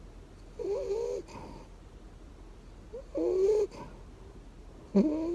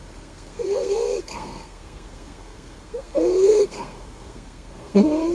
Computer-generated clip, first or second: second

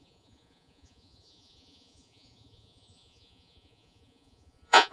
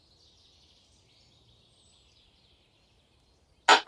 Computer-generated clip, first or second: first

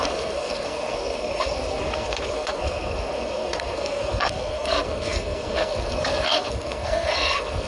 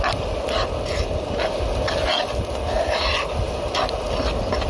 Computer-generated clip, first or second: first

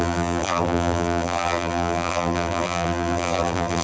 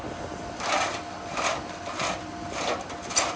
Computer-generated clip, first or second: first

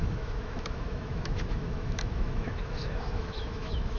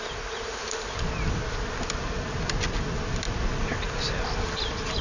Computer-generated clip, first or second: first